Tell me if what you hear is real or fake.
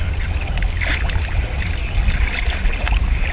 real